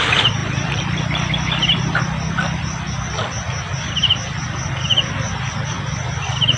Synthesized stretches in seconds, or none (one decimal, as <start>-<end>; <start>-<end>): none